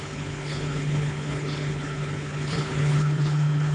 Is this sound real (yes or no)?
no